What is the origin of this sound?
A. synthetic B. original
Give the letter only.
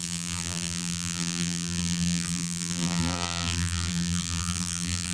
A